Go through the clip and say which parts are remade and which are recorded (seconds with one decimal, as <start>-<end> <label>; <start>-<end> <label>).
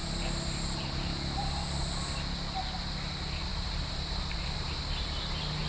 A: 0.0-3.5 recorded; 3.5-5.2 remade; 5.2-5.7 recorded